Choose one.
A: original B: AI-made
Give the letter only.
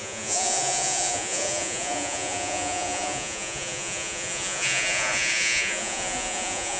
B